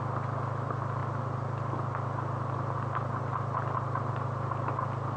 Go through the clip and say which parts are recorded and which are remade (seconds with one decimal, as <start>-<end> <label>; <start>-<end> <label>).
0.0-5.2 recorded